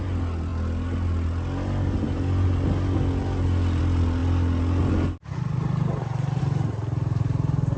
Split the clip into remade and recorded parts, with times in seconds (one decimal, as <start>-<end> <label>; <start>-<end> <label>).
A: 0.0-7.8 recorded